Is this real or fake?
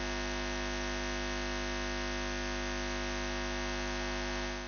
real